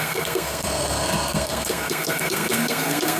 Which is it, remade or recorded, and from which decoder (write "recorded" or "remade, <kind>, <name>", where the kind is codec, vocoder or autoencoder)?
remade, codec, SNAC